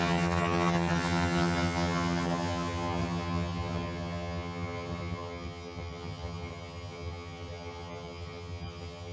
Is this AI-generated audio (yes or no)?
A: yes